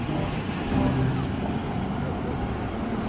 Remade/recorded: recorded